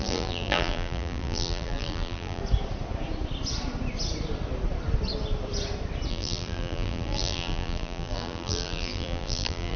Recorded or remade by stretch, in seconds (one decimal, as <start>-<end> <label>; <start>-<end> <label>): 0.0-2.4 remade; 2.4-6.1 recorded; 6.1-9.8 remade

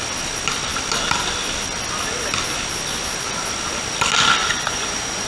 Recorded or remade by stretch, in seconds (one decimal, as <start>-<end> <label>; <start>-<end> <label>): 0.0-4.4 recorded; 4.4-5.3 remade

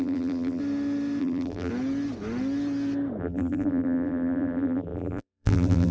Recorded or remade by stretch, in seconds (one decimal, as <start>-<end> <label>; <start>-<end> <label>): 0.0-0.6 remade; 0.6-1.2 recorded; 1.2-1.7 remade; 1.7-3.2 recorded; 3.2-5.9 remade

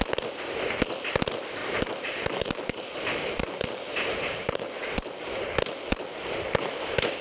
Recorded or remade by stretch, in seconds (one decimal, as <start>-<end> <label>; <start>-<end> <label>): 0.0-1.6 recorded; 1.6-5.2 remade; 5.2-7.2 recorded

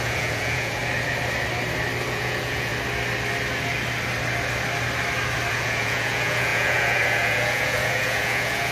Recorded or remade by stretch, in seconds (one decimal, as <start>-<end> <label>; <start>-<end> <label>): 0.0-0.8 remade; 0.8-2.1 recorded; 2.1-2.7 remade; 2.7-5.5 recorded; 5.5-8.7 remade